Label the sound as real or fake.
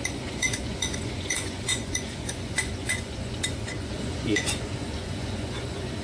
fake